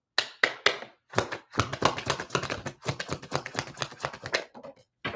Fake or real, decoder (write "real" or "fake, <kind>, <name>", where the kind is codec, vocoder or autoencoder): real